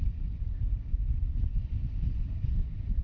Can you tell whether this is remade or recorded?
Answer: recorded